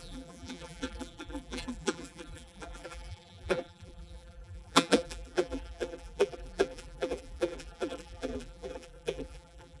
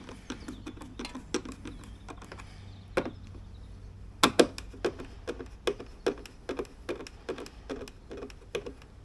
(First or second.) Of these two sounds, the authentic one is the second